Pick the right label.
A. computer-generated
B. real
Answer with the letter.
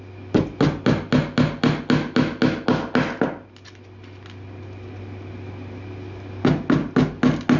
B